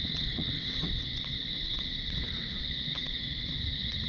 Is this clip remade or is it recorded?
remade